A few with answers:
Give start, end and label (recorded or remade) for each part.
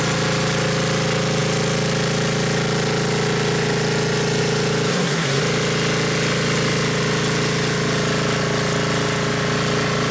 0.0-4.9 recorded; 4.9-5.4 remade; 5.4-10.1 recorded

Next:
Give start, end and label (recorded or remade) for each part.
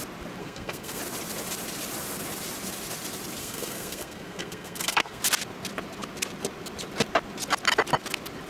0.0-0.4 recorded; 0.4-1.0 remade; 1.0-3.4 recorded; 3.4-5.2 remade; 5.2-8.5 recorded